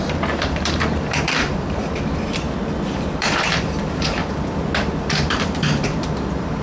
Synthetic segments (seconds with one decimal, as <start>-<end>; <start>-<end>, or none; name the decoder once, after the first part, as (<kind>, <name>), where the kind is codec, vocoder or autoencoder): 0.0-1.8 (vocoder, BigVGAN v2); 3.2-4.2; 5.2-6.6